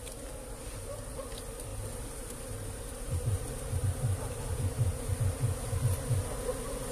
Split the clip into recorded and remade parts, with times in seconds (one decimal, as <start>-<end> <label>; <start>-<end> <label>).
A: 0.0-0.6 recorded; 0.6-1.2 remade; 1.2-1.7 recorded; 1.7-5.8 remade; 5.8-6.9 recorded